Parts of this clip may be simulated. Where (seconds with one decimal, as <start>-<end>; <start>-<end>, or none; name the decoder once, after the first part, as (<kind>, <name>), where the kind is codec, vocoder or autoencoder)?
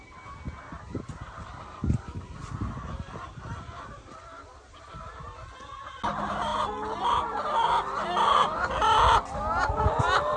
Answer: none